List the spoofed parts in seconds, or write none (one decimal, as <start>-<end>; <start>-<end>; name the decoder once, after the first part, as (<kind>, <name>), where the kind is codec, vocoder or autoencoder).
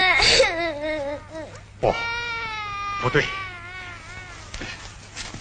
none